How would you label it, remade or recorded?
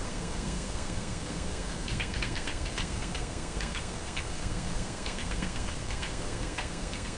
remade